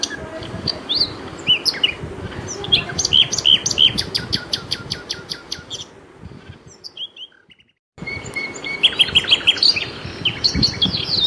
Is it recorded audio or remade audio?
recorded